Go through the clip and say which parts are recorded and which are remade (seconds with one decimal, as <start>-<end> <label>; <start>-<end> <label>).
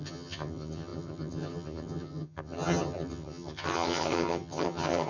0.0-5.1 remade